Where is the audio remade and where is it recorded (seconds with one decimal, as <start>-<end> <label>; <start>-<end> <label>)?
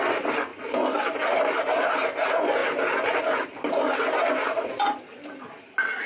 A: 0.0-4.4 recorded; 4.4-5.0 remade; 5.0-6.1 recorded